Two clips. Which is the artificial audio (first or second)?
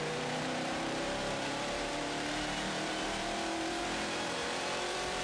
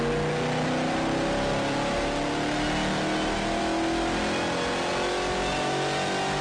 first